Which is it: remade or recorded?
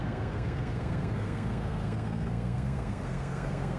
remade